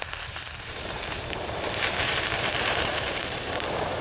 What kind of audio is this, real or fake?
fake